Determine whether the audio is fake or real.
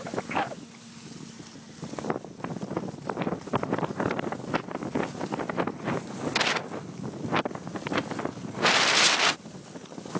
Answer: real